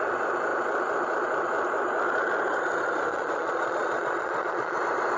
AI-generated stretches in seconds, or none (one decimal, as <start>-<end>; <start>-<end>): 3.1-4.8